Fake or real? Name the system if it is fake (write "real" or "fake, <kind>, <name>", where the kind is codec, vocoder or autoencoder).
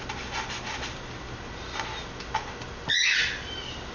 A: real